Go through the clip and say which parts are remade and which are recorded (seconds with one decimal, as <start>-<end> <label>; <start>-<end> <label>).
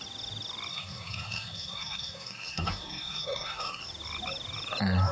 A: 0.0-0.7 recorded; 0.7-3.8 remade; 3.8-5.1 recorded